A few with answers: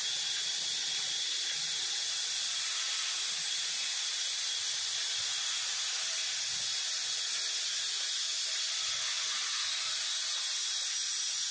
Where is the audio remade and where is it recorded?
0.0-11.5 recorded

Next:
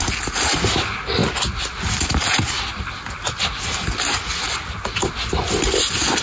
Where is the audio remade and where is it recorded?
0.0-6.2 recorded

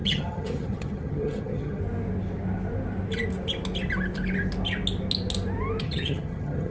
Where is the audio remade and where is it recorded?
0.0-1.8 remade; 1.8-5.8 recorded; 5.8-6.7 remade

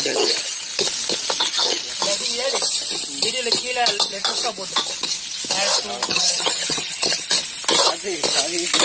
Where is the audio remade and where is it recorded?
0.0-0.7 remade; 0.7-1.4 recorded; 1.4-1.8 remade; 1.8-6.1 recorded; 6.1-7.3 remade; 7.3-8.8 recorded

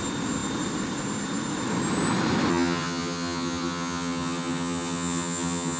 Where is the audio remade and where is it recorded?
0.0-2.5 recorded; 2.5-5.8 remade

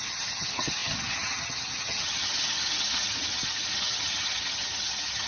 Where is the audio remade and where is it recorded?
0.0-5.3 remade